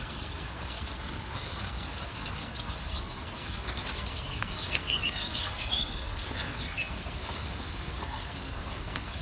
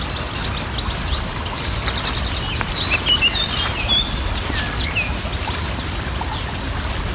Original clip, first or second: second